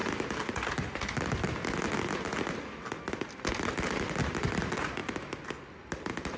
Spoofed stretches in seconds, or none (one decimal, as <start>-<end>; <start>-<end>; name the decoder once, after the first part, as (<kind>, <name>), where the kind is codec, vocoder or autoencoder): none